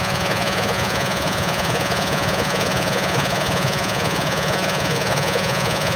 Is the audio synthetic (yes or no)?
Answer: yes